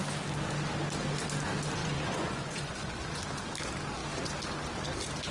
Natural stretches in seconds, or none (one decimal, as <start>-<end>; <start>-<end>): 0.0-1.8; 3.2-5.3